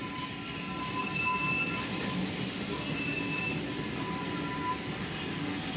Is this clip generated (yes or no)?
no